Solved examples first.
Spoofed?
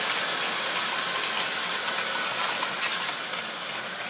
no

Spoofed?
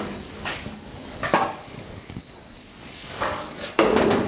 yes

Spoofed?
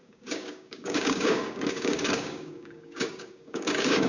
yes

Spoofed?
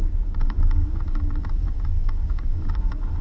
yes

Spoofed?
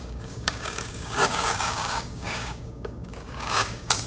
yes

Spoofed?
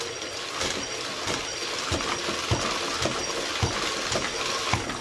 no